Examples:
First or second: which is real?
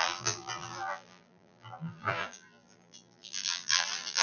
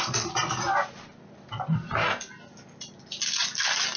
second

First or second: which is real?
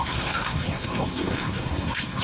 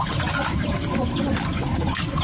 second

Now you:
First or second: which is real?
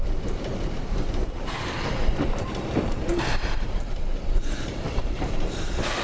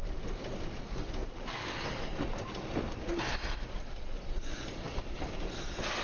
second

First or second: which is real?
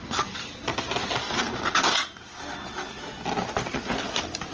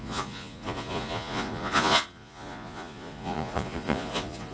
first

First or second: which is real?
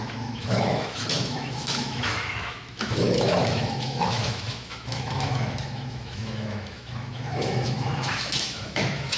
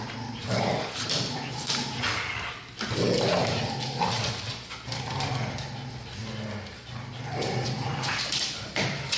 second